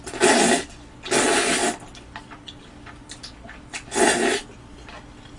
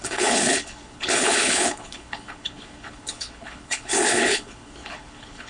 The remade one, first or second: second